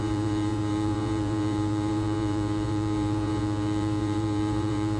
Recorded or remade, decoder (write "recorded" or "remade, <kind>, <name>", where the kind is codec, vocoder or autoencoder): remade, vocoder, Vocos